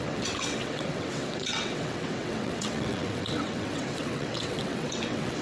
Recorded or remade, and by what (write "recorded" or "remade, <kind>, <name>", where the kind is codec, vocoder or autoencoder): remade, vocoder, WaveNeXt